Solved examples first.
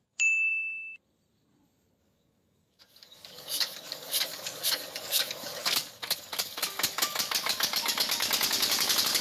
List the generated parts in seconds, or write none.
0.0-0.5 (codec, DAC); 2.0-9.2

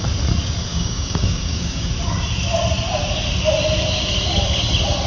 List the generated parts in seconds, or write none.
0.7-1.9 (codec, DAC)

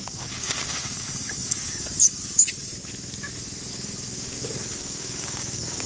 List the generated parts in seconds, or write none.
0.0-2.8 (codec, DAC); 3.7-5.9

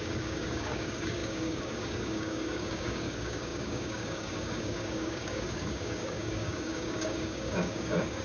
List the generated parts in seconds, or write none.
0.0-8.2 (codec, DAC)

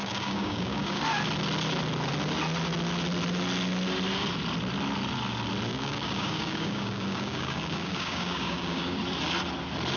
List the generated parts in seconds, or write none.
0.0-1.0 (codec, DAC); 5.7-9.0